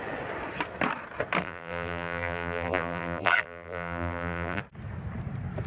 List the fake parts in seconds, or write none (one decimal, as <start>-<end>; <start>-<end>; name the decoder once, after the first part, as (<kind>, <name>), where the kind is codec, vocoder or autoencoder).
1.4-4.6 (vocoder, BigVGAN v2)